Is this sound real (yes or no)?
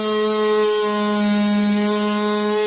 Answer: yes